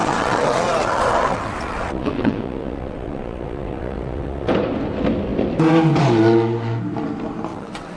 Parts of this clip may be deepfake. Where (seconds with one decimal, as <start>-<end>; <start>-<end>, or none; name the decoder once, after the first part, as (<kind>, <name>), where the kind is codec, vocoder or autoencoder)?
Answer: 0.0-4.5 (vocoder, WaveNeXt); 7.5-8.0